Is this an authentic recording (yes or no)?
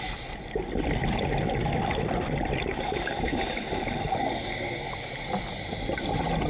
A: yes